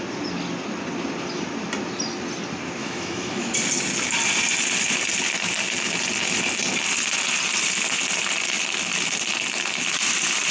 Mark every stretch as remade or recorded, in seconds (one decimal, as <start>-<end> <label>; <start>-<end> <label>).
0.0-2.8 recorded; 2.8-3.5 remade; 3.5-10.5 recorded